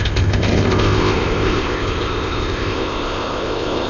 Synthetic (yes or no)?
yes